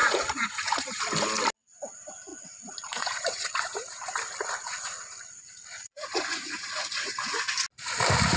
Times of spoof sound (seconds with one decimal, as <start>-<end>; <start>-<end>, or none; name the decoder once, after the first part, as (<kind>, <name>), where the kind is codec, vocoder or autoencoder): 0.0-1.0 (vocoder, Vocos); 2.3-4.1; 4.6-7.5